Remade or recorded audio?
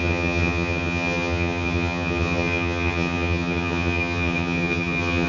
remade